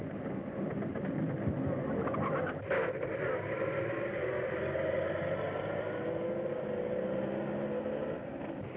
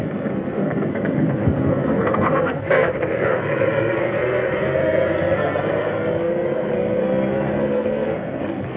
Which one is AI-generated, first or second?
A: second